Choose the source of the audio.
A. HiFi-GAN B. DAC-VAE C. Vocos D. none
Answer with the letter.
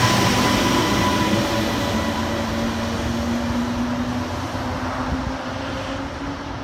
D